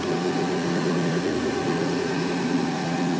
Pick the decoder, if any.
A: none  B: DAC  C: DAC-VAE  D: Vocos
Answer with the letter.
D